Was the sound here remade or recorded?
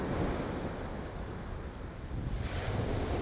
recorded